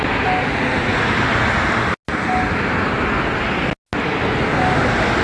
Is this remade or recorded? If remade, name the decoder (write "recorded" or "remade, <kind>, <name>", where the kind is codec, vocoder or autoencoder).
recorded